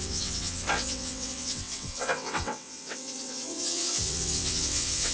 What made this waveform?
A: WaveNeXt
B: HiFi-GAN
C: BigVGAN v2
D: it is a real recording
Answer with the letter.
A